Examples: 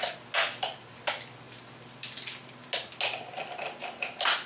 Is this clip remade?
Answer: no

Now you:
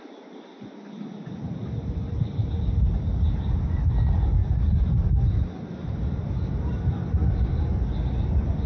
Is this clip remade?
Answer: no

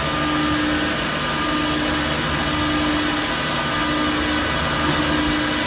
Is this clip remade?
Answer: no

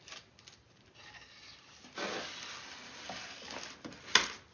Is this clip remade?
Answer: no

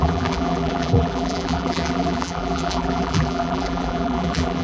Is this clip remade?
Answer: yes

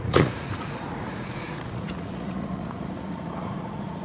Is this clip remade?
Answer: yes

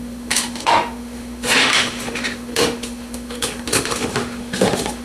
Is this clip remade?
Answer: yes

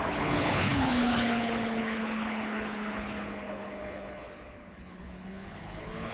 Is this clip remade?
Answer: yes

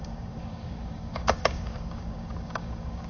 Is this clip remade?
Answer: yes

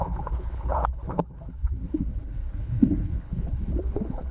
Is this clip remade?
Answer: yes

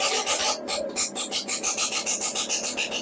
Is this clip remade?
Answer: no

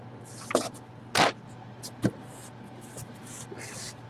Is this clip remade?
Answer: no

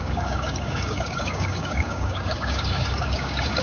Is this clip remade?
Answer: yes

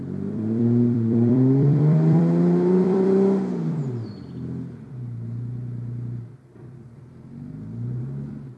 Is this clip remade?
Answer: yes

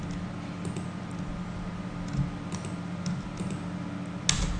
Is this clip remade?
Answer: no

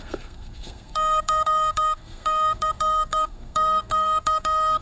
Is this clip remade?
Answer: yes